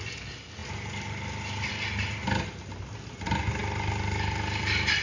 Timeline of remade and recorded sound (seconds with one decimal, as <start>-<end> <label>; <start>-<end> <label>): 0.0-5.0 recorded